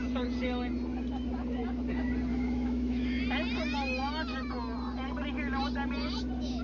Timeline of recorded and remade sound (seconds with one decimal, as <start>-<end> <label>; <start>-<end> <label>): 0.0-2.3 recorded; 2.3-3.2 remade; 3.2-6.6 recorded